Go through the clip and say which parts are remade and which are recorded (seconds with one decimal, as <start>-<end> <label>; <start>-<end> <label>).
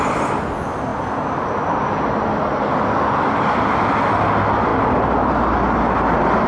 0.0-6.5 recorded